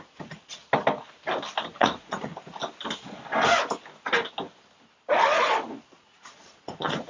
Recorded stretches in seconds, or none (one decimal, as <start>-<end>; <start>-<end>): 0.6-1.7; 2.3-6.0